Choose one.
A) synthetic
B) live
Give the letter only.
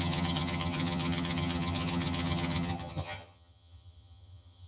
A